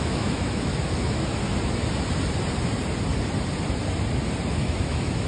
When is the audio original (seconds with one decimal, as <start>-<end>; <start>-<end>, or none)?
1.3-4.5